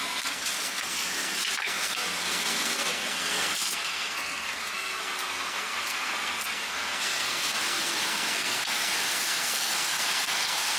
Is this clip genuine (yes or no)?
no